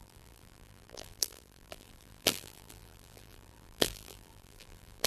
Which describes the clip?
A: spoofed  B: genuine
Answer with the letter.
A